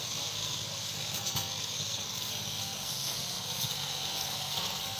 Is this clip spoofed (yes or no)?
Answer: yes